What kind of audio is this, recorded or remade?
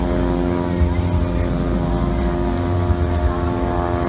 recorded